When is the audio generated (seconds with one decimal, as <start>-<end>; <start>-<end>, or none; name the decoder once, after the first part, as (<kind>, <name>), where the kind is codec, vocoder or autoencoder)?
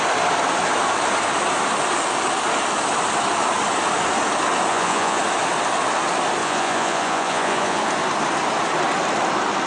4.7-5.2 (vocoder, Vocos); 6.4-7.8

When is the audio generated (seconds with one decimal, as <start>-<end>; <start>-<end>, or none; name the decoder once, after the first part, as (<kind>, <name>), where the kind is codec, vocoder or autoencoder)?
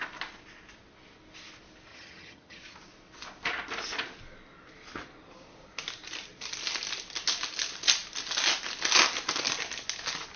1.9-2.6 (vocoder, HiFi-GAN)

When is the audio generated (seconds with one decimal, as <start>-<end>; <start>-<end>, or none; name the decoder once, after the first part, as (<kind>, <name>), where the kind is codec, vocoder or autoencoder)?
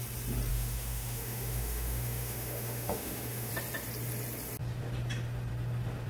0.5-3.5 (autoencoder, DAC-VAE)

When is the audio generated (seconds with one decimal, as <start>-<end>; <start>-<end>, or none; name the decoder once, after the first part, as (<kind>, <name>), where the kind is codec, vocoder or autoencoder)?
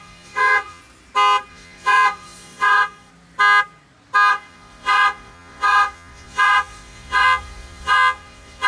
0.0-0.8 (vocoder, Vocos); 1.5-3.1; 4.3-8.7